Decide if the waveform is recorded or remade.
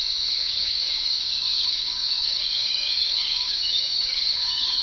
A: remade